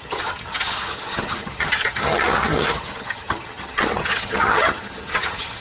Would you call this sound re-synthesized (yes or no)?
yes